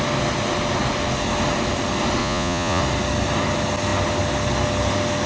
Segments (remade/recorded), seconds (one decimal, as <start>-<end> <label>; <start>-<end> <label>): 0.0-2.2 recorded; 2.2-2.8 remade; 2.8-5.3 recorded